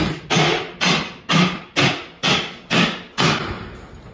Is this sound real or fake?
real